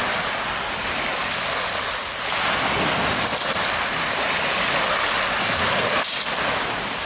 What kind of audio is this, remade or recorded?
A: recorded